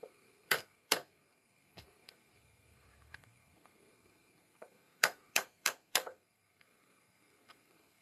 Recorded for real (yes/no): no